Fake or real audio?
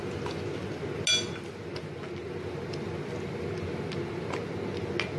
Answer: real